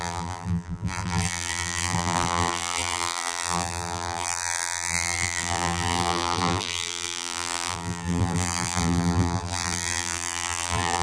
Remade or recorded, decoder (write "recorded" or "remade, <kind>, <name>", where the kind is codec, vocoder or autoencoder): remade, vocoder, BigVGAN v2